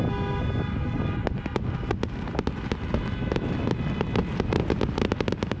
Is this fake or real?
real